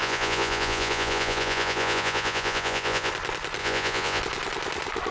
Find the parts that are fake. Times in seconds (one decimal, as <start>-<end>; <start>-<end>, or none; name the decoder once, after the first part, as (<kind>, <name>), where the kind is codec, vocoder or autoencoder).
0.0-3.1 (vocoder, Vocos); 3.6-4.2